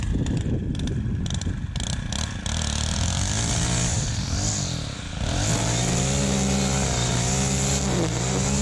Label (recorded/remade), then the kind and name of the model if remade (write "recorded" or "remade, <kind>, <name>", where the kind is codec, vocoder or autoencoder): recorded